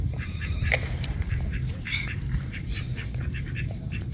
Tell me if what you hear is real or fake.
fake